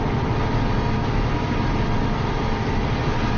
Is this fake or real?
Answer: real